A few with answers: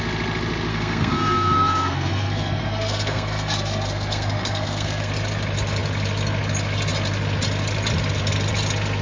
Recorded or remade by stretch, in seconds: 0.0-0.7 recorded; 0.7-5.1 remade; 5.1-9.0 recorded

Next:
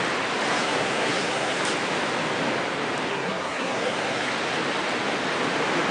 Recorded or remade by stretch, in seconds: 0.0-0.5 recorded; 0.5-1.6 remade; 1.6-3.1 recorded; 3.1-4.3 remade; 4.3-5.9 recorded

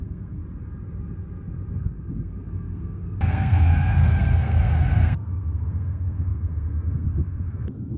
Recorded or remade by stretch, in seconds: 0.0-0.4 remade; 0.4-1.8 recorded; 1.8-8.0 remade

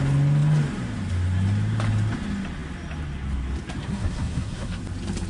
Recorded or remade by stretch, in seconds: 0.0-3.8 recorded; 3.8-4.8 remade; 4.8-5.3 recorded

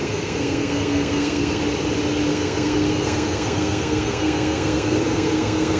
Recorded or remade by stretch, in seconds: 0.0-1.6 remade; 1.6-2.3 recorded; 2.3-5.8 remade